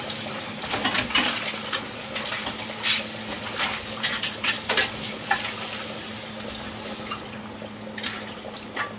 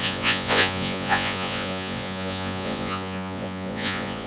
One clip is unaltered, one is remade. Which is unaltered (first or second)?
first